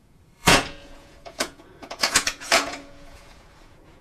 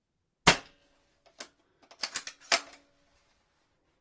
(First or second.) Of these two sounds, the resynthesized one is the first